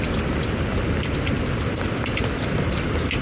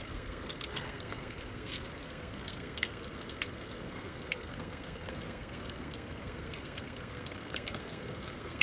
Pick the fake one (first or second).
second